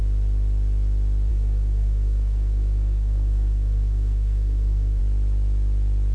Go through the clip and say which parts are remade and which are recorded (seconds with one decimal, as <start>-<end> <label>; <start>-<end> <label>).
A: 0.0-1.3 recorded; 1.3-5.0 remade; 5.0-6.1 recorded